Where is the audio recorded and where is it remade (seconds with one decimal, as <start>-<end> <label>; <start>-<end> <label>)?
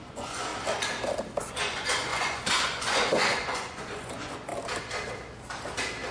0.0-0.5 remade; 0.5-1.5 recorded; 1.5-4.5 remade; 4.5-6.1 recorded